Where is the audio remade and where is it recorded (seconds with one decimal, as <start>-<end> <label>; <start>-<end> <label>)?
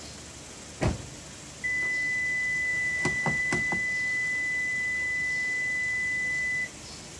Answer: 0.0-2.7 recorded; 2.7-3.4 remade; 3.4-7.2 recorded